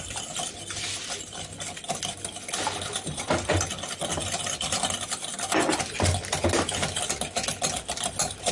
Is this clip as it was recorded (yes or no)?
yes